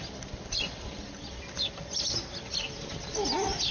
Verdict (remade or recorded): recorded